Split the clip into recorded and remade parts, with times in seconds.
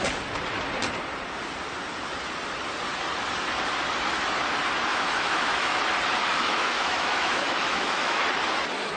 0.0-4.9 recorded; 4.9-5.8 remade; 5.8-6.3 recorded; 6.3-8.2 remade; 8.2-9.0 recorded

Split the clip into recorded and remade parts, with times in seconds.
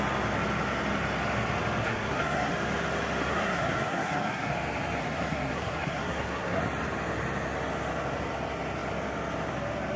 0.0-1.8 recorded; 1.8-2.5 remade; 2.5-3.3 recorded; 3.3-4.5 remade; 4.5-5.0 recorded; 5.0-6.6 remade; 6.6-10.0 recorded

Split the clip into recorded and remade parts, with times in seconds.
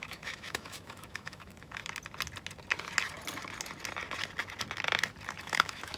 0.0-1.8 remade; 1.8-5.4 recorded; 5.4-6.0 remade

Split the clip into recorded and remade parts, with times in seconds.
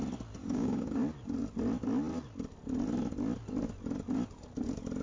0.0-0.4 recorded; 0.4-1.0 remade; 1.0-5.0 recorded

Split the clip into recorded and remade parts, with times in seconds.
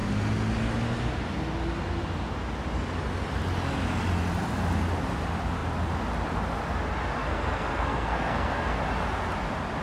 0.0-7.2 recorded; 7.2-8.8 remade; 8.8-9.8 recorded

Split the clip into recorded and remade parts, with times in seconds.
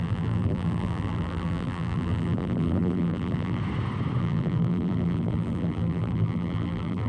0.0-3.6 remade; 3.6-4.2 recorded; 4.2-7.1 remade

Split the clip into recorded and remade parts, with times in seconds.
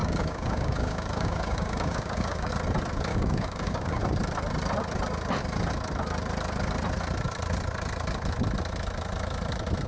0.0-2.5 remade; 2.5-3.1 recorded; 3.1-4.0 remade; 4.0-9.9 recorded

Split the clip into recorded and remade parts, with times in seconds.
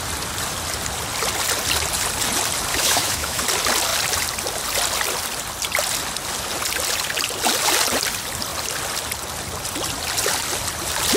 0.0-2.7 recorded; 2.7-3.4 remade; 3.4-11.2 recorded